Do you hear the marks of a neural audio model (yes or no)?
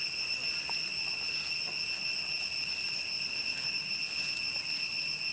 no